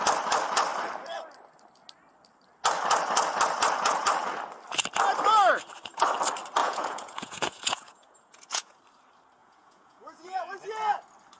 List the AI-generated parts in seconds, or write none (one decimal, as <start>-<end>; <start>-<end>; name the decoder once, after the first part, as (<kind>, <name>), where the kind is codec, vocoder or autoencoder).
6.6-8.8 (vocoder, Vocos); 9.4-10.5